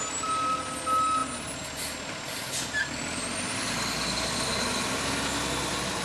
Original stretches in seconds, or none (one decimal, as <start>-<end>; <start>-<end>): 0.0-6.0

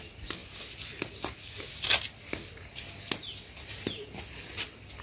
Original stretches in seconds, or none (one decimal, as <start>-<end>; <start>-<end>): 0.0-5.0

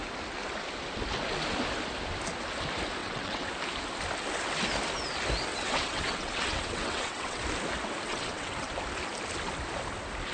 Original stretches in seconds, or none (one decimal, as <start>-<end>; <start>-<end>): 0.0-3.0; 3.5-5.5; 7.4-8.1; 8.7-10.3

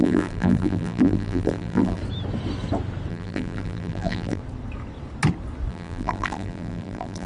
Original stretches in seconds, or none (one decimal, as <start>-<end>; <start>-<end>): 2.0-3.1; 4.4-5.7

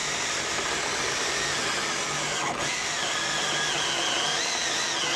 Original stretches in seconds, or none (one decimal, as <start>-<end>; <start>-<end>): 0.0-5.2

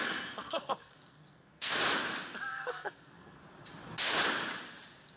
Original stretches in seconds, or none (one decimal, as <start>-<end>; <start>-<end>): 1.8-2.5; 3.4-5.2

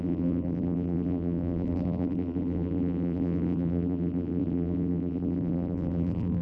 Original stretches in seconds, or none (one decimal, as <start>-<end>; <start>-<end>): none

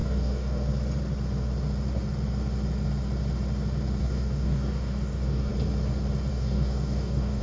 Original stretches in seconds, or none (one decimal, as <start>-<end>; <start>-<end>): 0.7-4.0; 5.5-6.3